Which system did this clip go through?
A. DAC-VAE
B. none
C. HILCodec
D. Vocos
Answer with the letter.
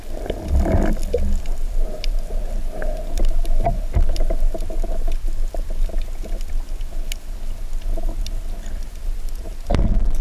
B